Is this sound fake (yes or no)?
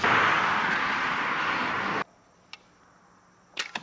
no